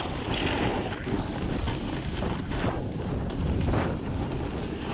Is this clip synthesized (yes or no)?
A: no